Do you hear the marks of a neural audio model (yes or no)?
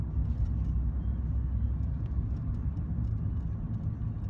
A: no